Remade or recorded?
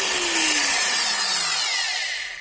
recorded